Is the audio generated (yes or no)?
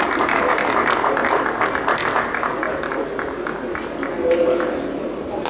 no